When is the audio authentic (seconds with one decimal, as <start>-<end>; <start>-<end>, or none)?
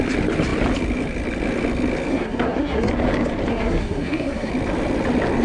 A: 0.0-2.1; 2.9-3.5; 4.5-5.4